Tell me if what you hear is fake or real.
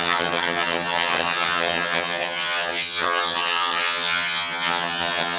fake